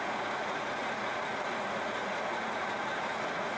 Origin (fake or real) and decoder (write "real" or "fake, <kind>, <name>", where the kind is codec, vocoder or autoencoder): fake, vocoder, Vocos